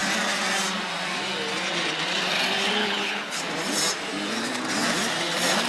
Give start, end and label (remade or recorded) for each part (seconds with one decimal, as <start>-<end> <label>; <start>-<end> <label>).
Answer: 0.0-2.8 recorded; 2.8-3.4 remade; 3.4-5.7 recorded